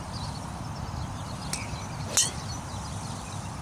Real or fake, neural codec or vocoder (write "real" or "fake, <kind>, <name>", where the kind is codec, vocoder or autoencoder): real